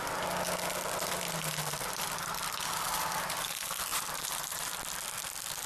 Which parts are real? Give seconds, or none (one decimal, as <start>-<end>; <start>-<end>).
0.0-3.9; 4.7-5.7